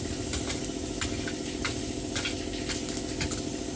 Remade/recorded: recorded